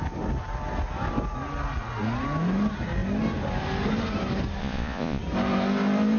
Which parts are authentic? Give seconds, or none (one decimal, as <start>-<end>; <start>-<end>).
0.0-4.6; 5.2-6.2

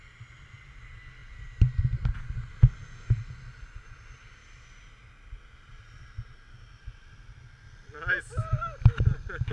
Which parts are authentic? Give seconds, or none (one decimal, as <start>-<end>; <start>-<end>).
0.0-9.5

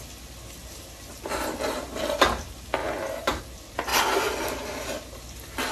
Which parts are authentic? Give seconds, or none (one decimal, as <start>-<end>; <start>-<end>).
0.0-0.6; 2.0-2.8; 3.4-5.7